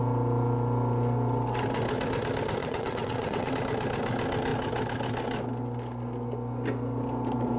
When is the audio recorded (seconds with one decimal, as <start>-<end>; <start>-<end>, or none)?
0.0-2.6; 3.5-7.6